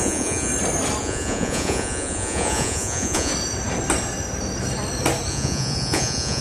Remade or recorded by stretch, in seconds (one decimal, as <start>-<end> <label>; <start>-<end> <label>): 0.0-0.5 remade; 0.5-1.0 recorded; 1.0-3.3 remade; 3.3-5.3 recorded; 5.3-6.4 remade